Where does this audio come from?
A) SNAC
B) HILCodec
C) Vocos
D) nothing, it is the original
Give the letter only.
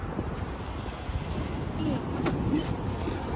D